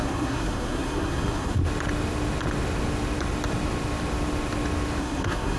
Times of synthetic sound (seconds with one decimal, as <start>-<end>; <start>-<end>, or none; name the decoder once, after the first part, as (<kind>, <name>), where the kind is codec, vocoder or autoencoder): 0.0-1.6 (codec, SNAC); 5.0-5.6